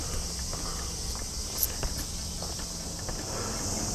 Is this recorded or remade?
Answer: recorded